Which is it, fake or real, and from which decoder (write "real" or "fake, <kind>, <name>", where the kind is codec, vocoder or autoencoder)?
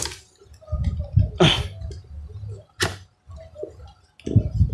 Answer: real